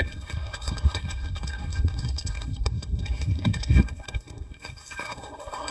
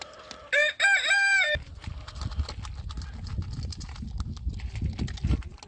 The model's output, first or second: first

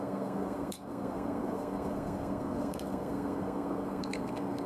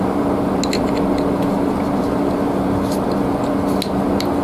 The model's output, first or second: first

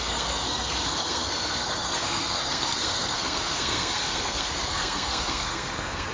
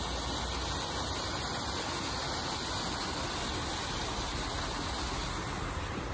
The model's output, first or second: first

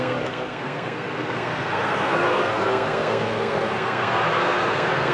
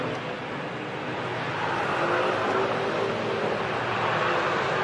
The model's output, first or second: first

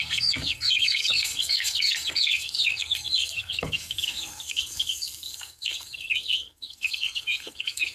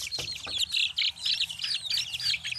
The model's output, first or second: first